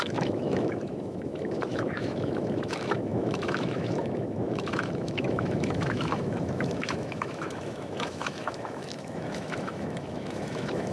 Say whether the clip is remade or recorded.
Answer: remade